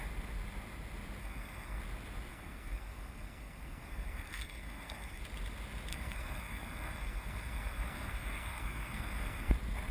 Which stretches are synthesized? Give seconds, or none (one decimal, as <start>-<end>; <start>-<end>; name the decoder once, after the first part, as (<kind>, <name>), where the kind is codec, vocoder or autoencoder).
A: 1.2-1.8 (codec, SNAC); 2.3-5.2; 5.9-9.5